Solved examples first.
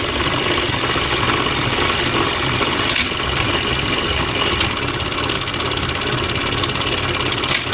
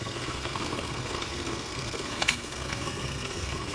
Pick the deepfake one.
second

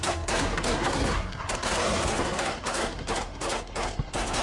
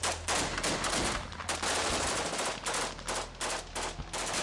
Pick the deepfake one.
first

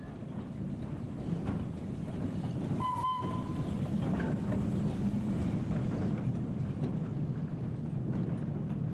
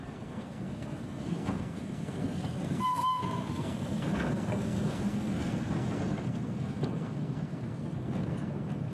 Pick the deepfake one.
second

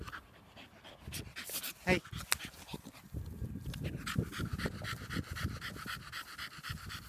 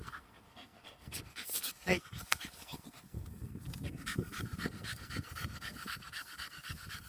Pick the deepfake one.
second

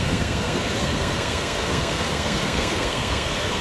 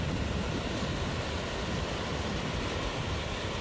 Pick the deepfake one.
first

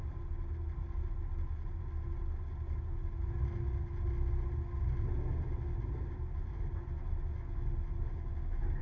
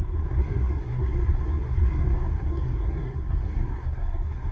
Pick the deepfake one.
second